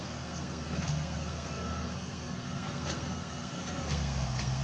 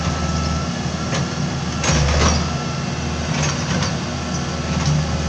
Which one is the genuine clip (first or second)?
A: second